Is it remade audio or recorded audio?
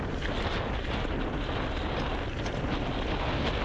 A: recorded